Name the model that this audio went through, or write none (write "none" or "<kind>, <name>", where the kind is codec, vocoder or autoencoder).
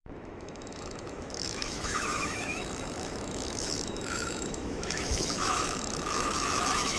autoencoder, DAC-VAE